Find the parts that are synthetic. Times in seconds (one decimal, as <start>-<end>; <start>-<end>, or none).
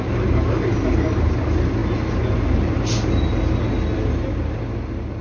none